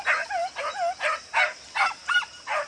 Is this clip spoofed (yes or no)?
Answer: no